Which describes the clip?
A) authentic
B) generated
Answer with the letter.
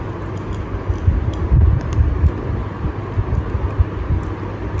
A